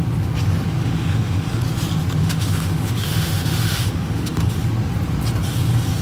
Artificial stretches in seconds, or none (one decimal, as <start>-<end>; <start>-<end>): 0.8-1.6; 2.2-4.5